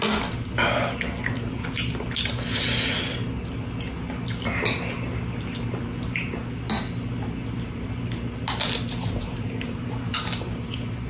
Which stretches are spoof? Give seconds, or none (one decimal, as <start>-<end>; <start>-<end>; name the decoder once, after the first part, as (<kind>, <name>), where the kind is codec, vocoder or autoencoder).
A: 9.0-10.3 (vocoder, BigVGAN v2)